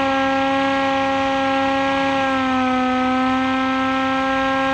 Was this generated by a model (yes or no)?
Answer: no